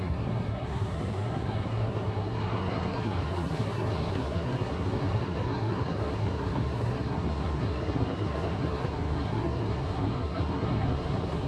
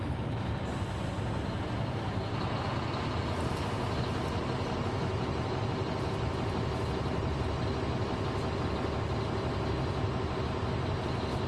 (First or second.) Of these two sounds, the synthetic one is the first